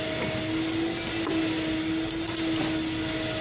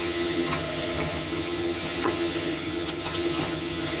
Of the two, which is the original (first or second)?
first